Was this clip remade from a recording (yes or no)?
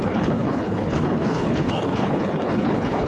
yes